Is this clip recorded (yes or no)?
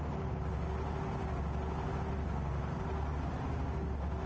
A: yes